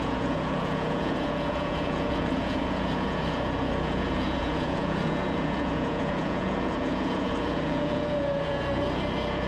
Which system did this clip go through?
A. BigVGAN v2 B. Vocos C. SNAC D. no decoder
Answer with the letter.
B